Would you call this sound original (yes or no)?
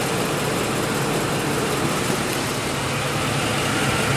yes